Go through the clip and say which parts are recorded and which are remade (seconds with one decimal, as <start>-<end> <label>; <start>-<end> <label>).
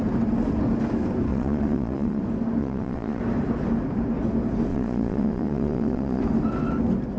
0.0-1.3 recorded; 1.3-2.2 remade; 2.2-2.6 recorded; 2.6-3.2 remade; 3.2-4.7 recorded; 4.7-6.2 remade; 6.2-7.2 recorded